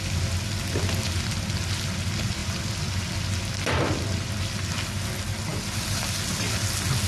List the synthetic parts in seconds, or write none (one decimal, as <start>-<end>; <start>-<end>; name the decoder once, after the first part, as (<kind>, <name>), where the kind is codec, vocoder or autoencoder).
none